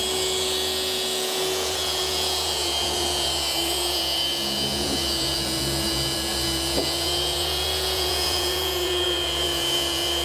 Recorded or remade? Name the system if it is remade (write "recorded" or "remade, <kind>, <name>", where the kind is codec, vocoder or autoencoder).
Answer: remade, vocoder, Vocos